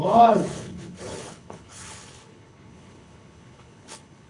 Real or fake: fake